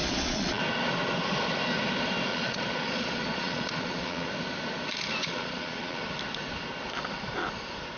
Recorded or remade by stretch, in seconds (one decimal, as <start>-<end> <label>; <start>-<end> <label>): 0.0-0.6 remade; 0.6-2.3 recorded; 2.3-4.3 remade; 4.3-5.2 recorded; 5.2-6.0 remade; 6.0-8.0 recorded